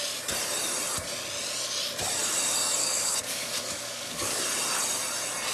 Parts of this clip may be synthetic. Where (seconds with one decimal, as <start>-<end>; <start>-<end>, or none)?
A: 2.8-4.4